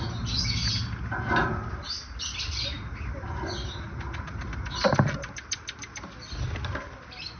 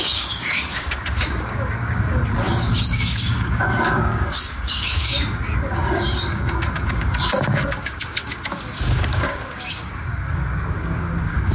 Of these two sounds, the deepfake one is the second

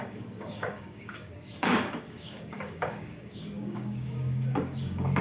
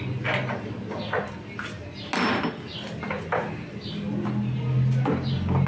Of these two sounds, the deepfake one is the first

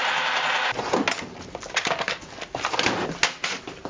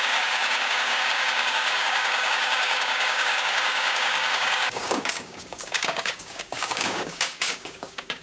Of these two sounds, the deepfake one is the second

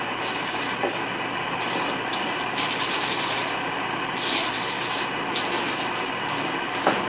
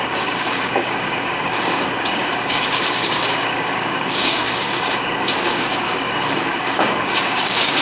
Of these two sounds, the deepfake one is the second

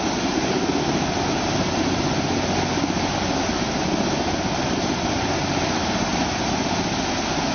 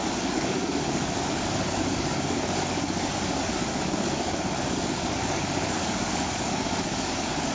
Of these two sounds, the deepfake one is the second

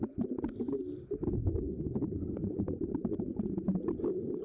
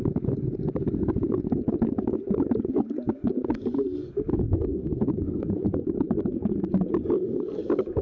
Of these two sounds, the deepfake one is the second